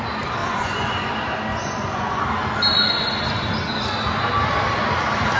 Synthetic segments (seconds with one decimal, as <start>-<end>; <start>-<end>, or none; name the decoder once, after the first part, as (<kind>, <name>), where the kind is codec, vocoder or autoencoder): 0.4-1.1 (vocoder, Vocos); 1.5-2.2; 2.7-3.3